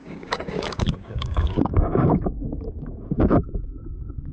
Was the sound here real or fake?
fake